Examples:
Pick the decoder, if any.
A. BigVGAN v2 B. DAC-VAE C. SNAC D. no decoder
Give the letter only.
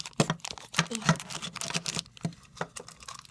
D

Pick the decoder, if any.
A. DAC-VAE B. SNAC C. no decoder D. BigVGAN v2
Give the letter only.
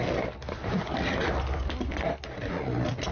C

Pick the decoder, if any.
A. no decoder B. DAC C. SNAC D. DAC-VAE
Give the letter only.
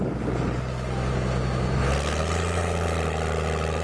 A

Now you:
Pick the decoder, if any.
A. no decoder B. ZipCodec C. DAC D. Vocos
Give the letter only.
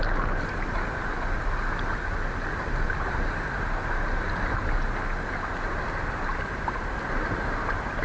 A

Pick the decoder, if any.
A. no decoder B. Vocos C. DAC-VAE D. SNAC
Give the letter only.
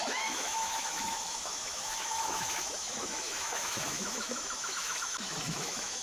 C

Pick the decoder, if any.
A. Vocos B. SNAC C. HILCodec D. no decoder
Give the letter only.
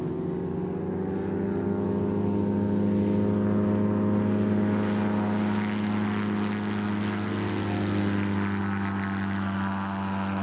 D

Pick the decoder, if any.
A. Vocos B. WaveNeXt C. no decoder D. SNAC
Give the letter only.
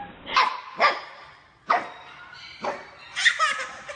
C